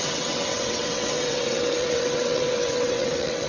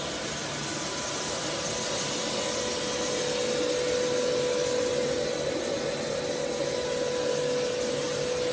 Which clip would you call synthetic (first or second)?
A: first